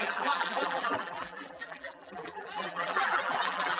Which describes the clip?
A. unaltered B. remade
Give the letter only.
B